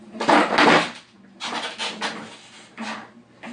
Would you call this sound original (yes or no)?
yes